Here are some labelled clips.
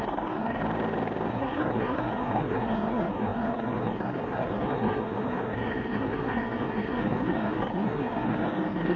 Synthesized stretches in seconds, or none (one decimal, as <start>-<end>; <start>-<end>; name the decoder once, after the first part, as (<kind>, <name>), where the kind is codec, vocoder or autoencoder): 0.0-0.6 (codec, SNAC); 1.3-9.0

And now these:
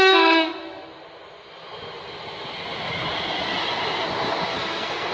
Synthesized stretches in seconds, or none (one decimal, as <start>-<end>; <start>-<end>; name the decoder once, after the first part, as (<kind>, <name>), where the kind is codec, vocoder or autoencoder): 4.5-5.1 (codec, SNAC)

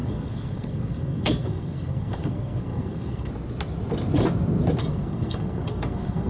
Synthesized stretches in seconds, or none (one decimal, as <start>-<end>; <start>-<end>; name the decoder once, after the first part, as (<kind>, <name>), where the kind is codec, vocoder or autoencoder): 0.0-3.3 (codec, SNAC); 4.8-6.3

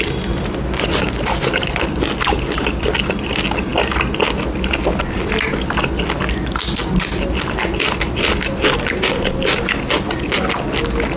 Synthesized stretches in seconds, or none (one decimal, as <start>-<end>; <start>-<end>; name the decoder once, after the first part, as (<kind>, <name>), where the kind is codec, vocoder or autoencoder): none

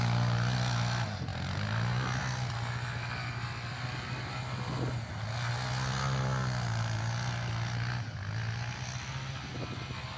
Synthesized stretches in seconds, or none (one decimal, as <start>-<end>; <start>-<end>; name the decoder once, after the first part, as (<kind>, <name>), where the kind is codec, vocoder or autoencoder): none

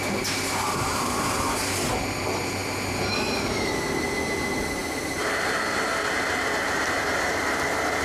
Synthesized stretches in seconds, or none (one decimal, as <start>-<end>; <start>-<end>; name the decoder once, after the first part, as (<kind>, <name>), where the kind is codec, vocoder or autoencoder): none

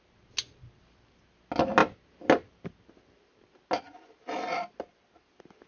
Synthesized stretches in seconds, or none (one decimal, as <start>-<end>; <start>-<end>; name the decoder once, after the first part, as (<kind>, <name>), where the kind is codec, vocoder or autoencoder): none

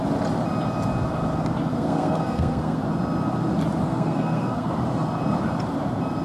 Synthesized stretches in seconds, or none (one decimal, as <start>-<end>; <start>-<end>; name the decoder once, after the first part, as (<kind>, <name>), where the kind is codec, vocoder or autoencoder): 1.7-2.8 (codec, SNAC); 3.9-4.7